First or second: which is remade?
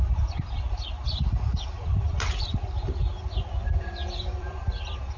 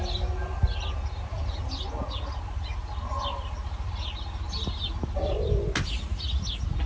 first